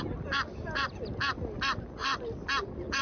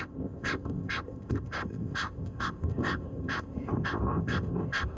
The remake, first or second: second